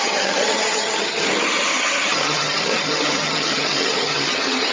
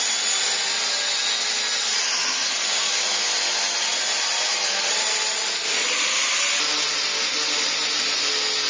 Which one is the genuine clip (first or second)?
second